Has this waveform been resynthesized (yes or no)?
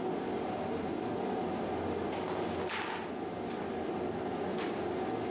no